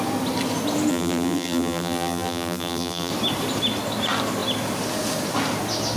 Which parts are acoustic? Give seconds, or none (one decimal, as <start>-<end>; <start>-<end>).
0.0-0.9; 3.1-6.0